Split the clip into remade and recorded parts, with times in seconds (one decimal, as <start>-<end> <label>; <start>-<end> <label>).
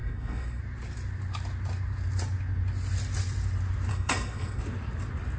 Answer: 0.0-0.6 remade; 0.6-3.9 recorded; 3.9-4.6 remade; 4.6-5.4 recorded